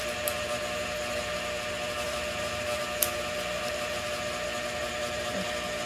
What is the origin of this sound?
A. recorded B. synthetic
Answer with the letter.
A